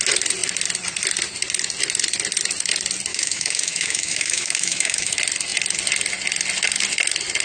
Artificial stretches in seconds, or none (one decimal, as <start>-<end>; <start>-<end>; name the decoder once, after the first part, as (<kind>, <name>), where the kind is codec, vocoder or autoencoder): 3.1-5.1 (autoencoder, DAC-VAE)